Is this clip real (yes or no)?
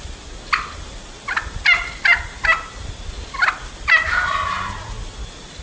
yes